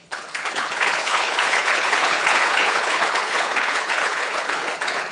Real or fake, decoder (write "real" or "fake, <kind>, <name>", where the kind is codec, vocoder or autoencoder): fake, codec, HILCodec